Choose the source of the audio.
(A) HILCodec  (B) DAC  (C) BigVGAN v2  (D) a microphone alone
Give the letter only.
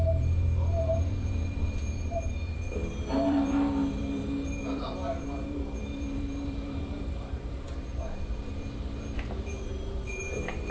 C